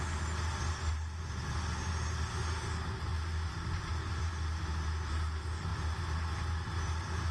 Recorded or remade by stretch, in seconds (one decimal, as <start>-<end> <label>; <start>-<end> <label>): 0.0-7.3 recorded